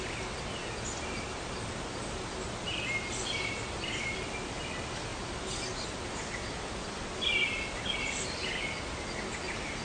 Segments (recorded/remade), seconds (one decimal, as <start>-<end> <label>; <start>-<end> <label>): 0.0-9.8 recorded